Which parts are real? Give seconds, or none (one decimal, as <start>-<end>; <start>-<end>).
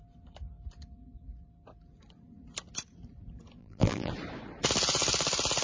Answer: 0.0-3.6; 4.1-5.6